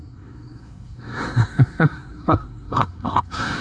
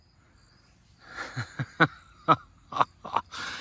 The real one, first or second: second